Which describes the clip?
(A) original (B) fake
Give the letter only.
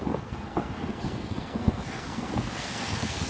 B